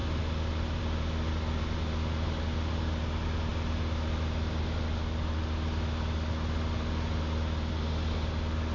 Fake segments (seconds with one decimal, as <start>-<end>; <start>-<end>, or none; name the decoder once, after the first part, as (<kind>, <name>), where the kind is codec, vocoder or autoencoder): none